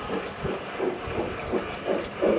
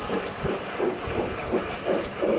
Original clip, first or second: first